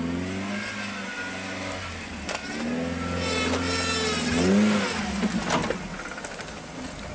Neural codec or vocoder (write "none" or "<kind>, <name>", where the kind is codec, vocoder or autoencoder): none